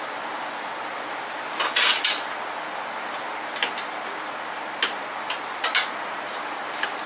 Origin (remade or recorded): recorded